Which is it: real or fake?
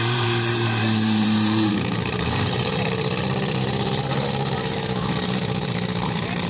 fake